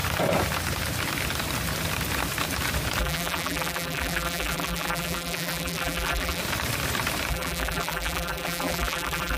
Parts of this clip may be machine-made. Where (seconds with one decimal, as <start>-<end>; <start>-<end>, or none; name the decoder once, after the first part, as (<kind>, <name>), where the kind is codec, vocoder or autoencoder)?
3.0-6.4 (vocoder, BigVGAN v2); 7.3-9.4